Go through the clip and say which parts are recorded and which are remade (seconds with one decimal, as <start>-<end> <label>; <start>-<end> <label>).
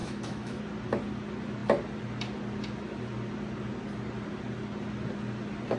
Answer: 0.0-0.6 remade; 0.6-5.8 recorded